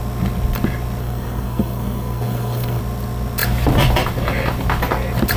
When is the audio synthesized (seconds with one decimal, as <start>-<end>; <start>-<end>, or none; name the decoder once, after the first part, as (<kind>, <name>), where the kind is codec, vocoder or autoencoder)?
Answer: 1.0-2.8 (codec, SNAC)